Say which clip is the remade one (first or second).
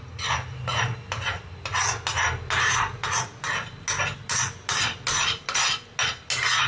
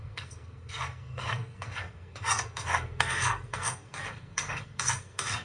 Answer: second